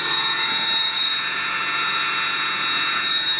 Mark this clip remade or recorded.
remade